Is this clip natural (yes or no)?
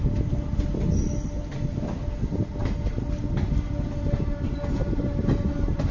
yes